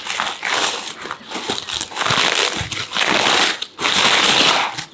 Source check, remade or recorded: recorded